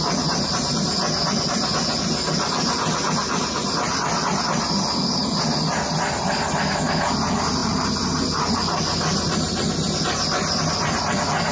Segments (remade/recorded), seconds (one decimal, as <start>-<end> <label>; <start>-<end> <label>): 0.0-11.5 recorded